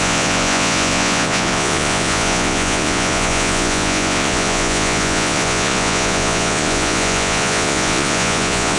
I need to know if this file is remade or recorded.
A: remade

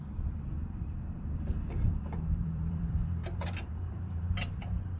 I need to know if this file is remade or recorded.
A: remade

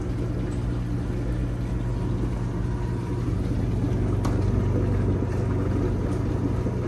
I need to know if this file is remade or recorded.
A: recorded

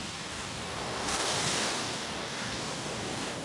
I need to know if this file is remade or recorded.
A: remade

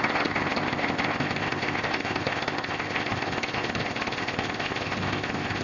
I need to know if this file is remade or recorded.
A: remade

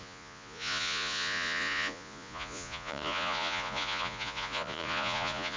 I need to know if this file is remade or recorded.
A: remade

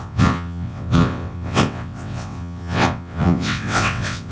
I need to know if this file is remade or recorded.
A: remade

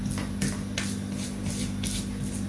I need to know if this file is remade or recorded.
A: recorded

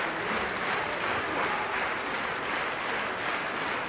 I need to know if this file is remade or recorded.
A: recorded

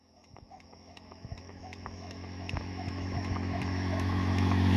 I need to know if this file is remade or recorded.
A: remade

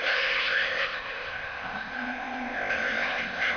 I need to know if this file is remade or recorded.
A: remade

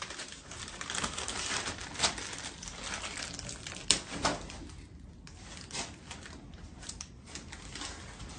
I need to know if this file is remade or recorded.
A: recorded